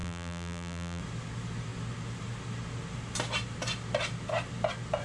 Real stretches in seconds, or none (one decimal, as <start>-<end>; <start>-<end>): 1.0-5.0